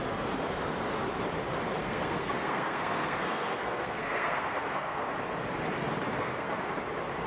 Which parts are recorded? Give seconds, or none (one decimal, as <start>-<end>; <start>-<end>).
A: 0.0-1.8; 5.1-6.1; 6.7-7.3